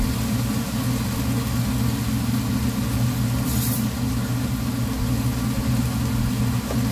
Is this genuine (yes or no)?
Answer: yes